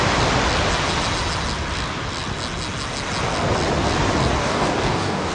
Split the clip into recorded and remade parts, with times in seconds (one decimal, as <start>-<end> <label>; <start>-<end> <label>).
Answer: 0.0-4.4 recorded; 4.4-5.3 remade